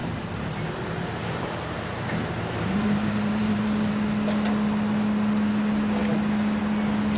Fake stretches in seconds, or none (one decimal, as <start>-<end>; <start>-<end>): 0.0-3.9